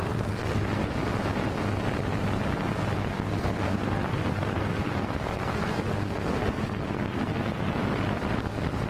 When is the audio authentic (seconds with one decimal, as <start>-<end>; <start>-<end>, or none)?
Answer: 0.8-3.0; 7.8-8.9